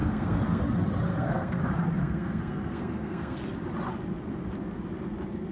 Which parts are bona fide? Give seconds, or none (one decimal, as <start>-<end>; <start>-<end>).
0.6-1.1; 1.6-2.0; 3.4-5.5